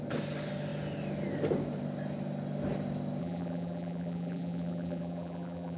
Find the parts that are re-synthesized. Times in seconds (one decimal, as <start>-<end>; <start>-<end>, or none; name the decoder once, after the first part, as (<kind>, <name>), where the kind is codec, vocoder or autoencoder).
3.2-5.8 (vocoder, BigVGAN v2)